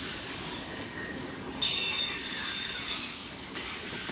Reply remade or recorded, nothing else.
remade